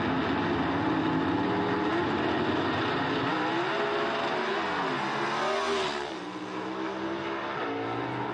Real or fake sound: real